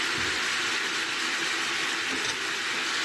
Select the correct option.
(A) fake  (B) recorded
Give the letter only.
B